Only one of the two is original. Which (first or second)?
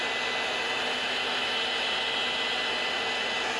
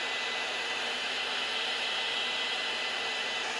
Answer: first